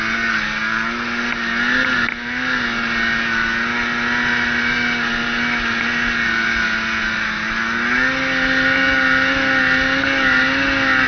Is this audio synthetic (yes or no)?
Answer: no